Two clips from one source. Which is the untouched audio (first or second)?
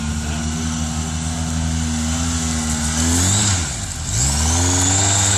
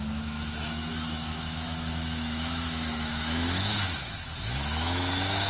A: first